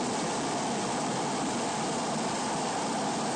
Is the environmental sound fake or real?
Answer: real